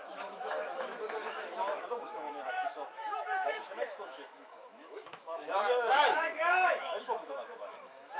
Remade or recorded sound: remade